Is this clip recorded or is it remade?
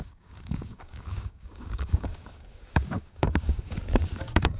remade